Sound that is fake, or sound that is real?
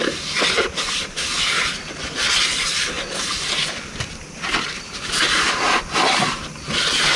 real